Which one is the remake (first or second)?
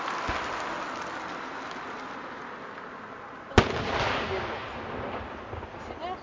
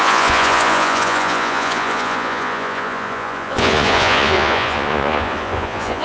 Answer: second